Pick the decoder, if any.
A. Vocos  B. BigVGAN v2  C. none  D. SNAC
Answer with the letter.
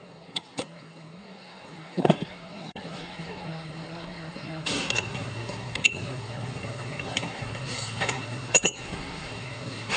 D